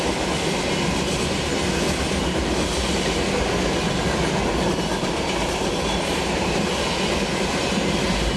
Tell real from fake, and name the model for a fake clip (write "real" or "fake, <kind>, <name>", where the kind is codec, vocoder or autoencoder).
real